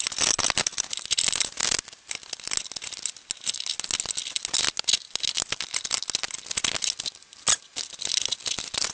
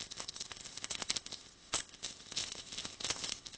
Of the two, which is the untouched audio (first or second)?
first